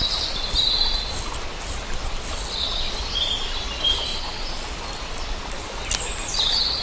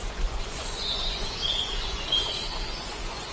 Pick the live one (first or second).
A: first